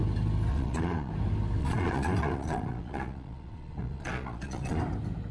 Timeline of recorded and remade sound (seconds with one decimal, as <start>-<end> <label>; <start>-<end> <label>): 0.0-0.5 recorded; 0.5-1.1 remade; 1.1-1.6 recorded; 1.6-4.8 remade; 4.8-5.3 recorded